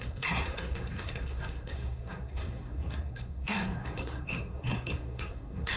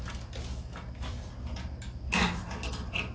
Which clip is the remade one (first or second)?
first